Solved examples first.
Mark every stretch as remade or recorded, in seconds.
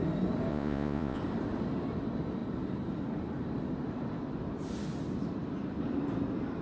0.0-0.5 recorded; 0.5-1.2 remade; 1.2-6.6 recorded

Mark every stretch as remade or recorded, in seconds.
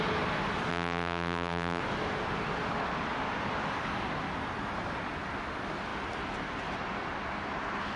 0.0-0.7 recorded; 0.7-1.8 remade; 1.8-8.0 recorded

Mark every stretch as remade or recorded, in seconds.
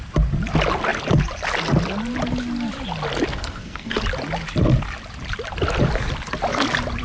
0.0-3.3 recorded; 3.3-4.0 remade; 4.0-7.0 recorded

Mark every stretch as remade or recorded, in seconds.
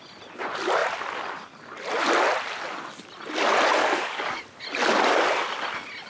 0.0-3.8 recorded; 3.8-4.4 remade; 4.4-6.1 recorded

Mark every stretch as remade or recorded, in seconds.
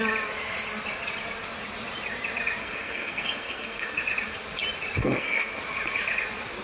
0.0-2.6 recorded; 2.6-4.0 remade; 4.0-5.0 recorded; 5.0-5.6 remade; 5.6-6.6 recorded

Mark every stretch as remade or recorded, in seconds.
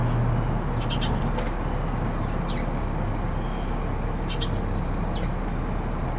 0.0-6.2 recorded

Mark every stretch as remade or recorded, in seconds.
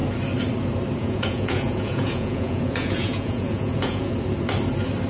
0.0-1.0 recorded; 1.0-4.1 remade; 4.1-5.1 recorded